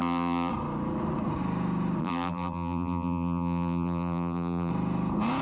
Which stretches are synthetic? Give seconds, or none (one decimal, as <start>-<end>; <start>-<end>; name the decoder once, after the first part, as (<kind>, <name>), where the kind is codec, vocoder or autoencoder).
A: 0.0-0.5 (vocoder, BigVGAN v2); 2.0-4.7